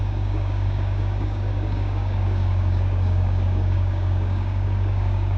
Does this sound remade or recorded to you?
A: remade